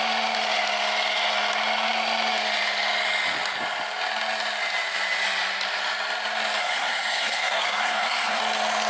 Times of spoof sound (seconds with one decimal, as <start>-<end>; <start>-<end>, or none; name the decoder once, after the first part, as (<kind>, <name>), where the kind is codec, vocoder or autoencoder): 6.6-8.4 (codec, SNAC)